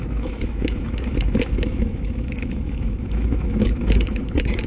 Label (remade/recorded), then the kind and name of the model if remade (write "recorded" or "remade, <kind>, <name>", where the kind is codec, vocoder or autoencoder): remade, autoencoder, DAC-VAE